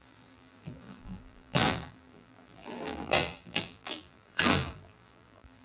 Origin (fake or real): fake